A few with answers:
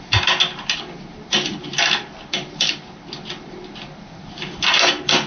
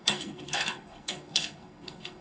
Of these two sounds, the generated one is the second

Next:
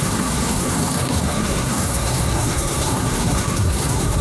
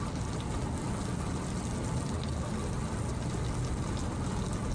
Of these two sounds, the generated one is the first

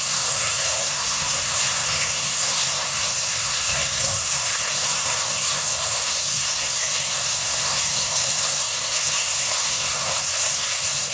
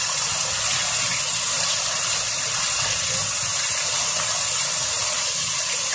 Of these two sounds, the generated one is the first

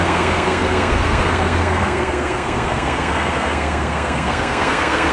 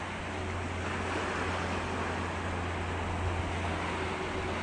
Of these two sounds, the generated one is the first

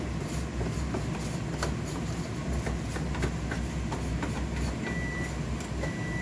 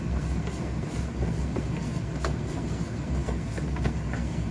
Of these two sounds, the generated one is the second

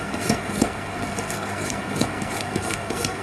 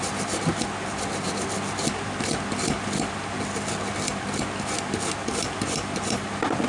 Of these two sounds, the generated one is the first